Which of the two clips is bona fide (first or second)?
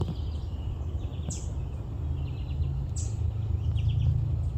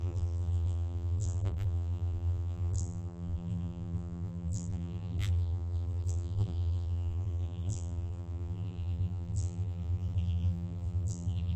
first